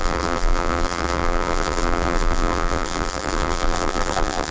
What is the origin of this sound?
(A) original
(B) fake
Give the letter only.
B